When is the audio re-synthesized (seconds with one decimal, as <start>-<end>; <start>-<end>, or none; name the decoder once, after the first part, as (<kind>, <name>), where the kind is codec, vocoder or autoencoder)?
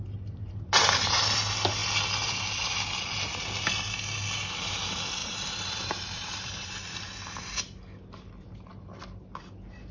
5.2-7.1 (vocoder, BigVGAN v2)